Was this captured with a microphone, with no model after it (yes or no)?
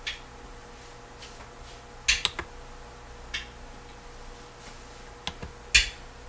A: yes